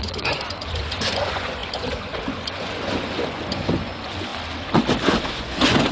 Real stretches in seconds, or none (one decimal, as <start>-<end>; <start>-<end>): 4.3-5.1